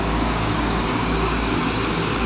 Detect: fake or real fake